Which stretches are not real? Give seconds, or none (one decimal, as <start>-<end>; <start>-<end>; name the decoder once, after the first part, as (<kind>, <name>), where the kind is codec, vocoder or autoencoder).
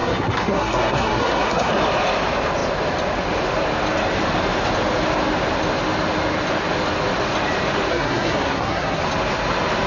0.0-1.7 (codec, SNAC); 7.9-9.0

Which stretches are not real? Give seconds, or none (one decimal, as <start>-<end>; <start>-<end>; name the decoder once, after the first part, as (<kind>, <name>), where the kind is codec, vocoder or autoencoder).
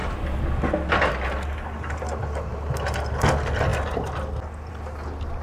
none